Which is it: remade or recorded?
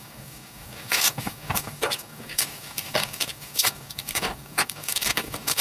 remade